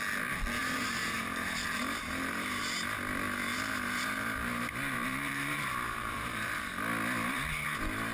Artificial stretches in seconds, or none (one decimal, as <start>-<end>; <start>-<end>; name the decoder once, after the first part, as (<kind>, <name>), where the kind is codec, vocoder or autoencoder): 0.6-2.6 (vocoder, BigVGAN v2); 3.5-6.7